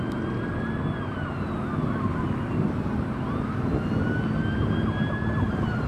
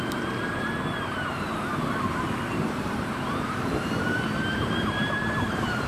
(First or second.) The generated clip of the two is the second